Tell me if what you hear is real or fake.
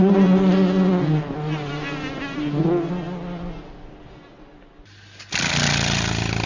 real